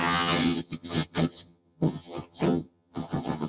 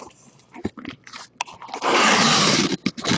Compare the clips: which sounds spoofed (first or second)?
first